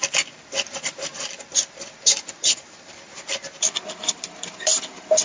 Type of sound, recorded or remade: remade